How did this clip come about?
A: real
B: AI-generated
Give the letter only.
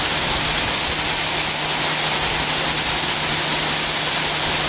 A